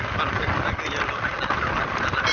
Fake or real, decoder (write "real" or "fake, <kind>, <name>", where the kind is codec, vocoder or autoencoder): real